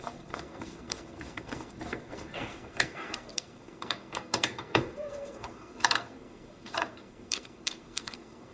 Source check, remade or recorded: remade